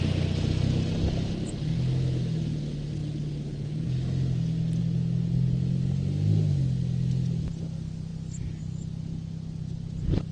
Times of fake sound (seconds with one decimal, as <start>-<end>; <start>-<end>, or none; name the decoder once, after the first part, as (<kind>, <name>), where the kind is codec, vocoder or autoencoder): none